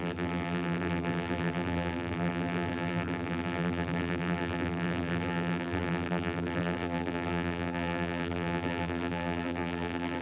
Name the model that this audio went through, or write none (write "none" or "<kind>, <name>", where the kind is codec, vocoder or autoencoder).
vocoder, BigVGAN v2